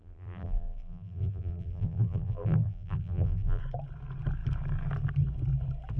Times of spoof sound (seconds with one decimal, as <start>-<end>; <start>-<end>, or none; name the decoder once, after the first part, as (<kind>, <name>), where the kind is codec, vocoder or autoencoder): 0.0-3.6 (vocoder, BigVGAN v2)

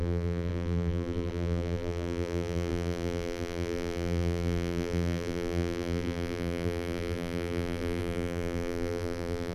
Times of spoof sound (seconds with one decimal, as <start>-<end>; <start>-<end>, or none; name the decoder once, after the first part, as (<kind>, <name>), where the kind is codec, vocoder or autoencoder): 0.0-9.5 (vocoder, BigVGAN v2)

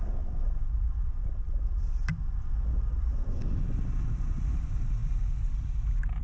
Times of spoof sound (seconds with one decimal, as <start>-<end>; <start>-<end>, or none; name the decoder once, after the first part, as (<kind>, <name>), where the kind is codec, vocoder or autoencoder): none

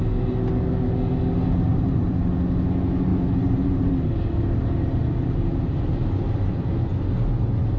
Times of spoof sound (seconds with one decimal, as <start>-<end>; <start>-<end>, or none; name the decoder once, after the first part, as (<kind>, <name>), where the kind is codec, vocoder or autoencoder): 1.7-2.3 (vocoder, BigVGAN v2); 3.1-3.9; 5.9-6.5